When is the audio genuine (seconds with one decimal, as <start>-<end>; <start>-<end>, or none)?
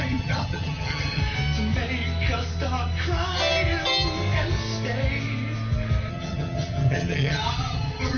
1.2-6.1